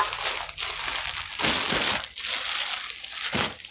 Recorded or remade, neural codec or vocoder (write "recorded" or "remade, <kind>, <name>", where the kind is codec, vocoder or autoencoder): recorded